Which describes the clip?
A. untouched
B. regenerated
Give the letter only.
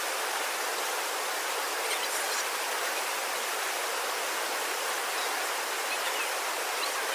A